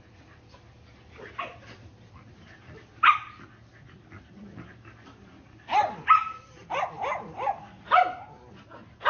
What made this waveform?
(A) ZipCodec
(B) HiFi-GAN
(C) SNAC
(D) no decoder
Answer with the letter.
D